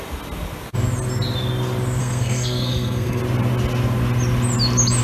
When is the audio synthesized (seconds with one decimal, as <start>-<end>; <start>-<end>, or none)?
2.0-3.2